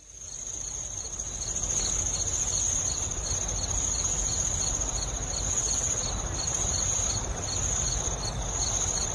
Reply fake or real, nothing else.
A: real